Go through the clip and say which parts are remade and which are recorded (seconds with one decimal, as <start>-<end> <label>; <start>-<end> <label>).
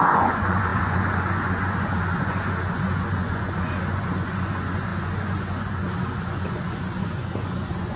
0.0-8.0 remade